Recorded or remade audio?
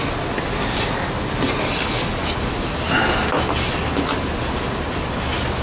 recorded